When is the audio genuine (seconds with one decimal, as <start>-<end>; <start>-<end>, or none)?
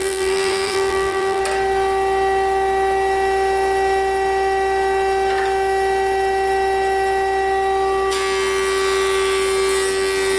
1.4-10.4